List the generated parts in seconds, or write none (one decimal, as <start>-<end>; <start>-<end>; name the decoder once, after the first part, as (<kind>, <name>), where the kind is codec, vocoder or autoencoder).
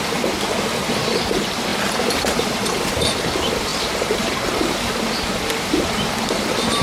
none